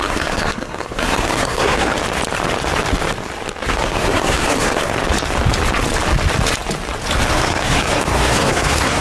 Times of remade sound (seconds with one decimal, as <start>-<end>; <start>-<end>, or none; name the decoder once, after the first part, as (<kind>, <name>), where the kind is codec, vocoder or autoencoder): 0.0-1.9 (codec, SNAC); 3.7-4.9; 7.3-9.0